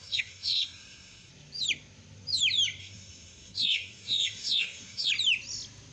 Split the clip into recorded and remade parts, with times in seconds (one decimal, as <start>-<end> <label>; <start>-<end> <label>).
0.0-1.3 remade; 1.3-2.8 recorded; 2.8-5.1 remade; 5.1-5.9 recorded